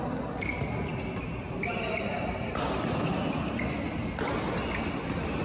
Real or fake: real